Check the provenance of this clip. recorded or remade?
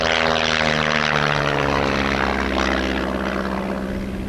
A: recorded